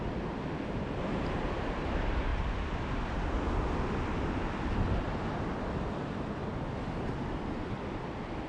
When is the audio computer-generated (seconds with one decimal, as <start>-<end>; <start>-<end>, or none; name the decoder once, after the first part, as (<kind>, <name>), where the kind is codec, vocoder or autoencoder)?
0.0-2.3 (vocoder, BigVGAN v2); 4.7-8.5